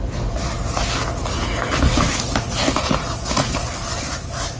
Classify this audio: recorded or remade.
recorded